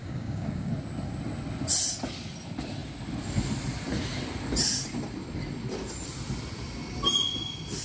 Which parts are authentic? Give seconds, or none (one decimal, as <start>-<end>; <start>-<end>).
0.7-7.8